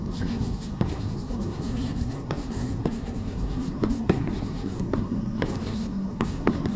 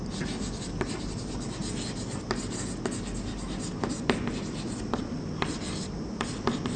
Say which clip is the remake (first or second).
first